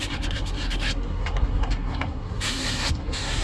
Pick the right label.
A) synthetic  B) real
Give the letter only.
A